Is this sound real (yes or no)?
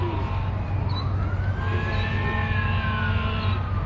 yes